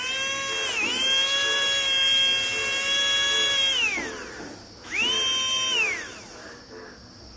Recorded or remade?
recorded